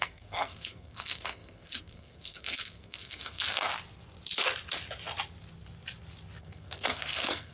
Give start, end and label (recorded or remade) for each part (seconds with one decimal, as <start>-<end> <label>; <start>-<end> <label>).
0.0-3.7 remade; 3.7-6.4 recorded; 6.4-7.5 remade